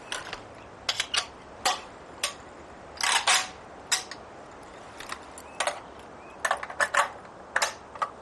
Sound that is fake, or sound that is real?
real